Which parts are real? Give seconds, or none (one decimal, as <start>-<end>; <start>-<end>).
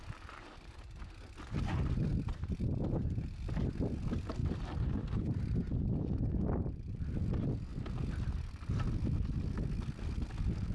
0.0-10.7